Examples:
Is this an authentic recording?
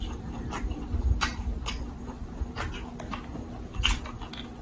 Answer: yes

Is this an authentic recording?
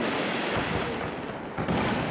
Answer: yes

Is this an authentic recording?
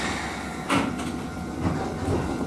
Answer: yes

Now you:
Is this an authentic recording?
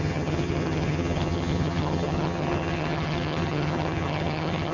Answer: no